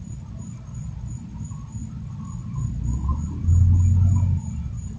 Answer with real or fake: real